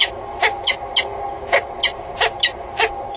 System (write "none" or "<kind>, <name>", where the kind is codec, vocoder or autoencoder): none